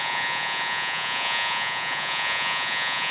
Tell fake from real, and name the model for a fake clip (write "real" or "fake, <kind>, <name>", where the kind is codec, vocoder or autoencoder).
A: fake, vocoder, Vocos